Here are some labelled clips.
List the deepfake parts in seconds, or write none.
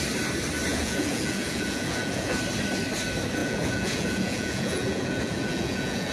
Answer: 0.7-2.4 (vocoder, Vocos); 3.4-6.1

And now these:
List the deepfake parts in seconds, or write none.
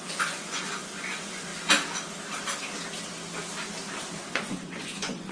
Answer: 0.0-1.5 (vocoder, Vocos); 4.3-5.3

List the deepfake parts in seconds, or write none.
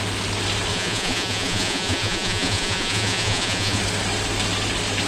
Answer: 0.7-3.8 (vocoder, Vocos)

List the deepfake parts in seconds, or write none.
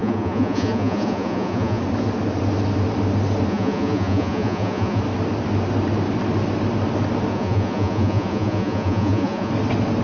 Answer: 0.0-1.8 (vocoder, Vocos); 3.5-5.0; 7.3-9.5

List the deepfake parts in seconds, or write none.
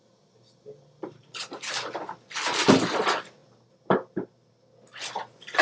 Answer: 1.2-1.7 (vocoder, Vocos)